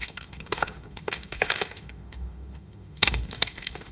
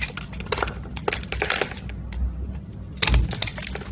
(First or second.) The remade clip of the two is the first